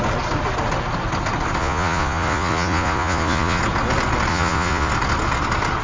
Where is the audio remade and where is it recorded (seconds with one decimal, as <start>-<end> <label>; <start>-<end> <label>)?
0.0-1.6 recorded; 1.6-3.6 remade; 3.6-4.3 recorded; 4.3-4.9 remade; 4.9-5.8 recorded